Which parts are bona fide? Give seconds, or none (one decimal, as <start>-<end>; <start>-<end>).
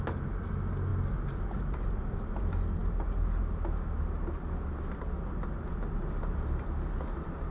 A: 0.0-7.5